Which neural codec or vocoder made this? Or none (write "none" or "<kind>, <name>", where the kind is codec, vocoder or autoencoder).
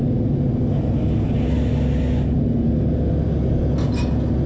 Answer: none